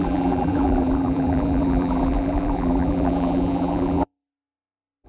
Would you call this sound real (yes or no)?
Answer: no